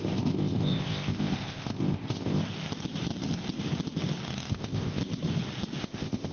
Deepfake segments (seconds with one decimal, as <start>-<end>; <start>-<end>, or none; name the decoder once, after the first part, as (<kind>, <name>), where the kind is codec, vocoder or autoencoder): 0.0-2.4 (codec, ZipCodec); 4.5-5.0; 5.8-6.3